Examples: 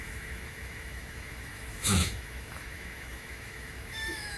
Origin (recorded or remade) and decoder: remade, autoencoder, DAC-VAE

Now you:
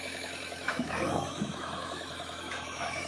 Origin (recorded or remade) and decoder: remade, autoencoder, DAC-VAE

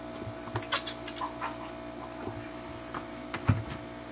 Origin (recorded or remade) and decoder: recorded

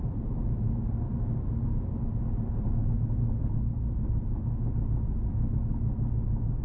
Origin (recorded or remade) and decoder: recorded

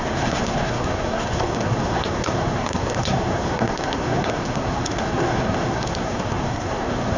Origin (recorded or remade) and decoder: remade, codec, SNAC